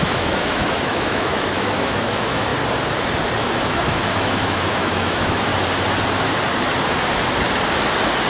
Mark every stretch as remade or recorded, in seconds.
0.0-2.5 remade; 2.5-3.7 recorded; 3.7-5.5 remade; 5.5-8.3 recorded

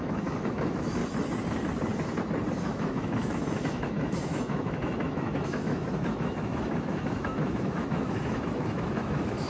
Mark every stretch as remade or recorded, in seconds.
0.0-1.0 remade; 1.0-2.6 recorded; 2.6-9.5 remade

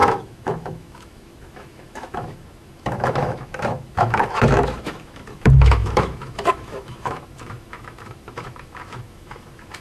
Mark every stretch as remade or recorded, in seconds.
0.0-9.8 remade